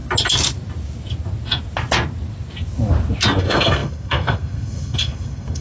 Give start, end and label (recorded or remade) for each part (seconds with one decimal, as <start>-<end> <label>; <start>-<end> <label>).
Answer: 0.0-3.4 recorded; 3.4-5.6 remade